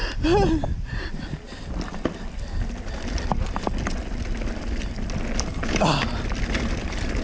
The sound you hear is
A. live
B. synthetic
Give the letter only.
A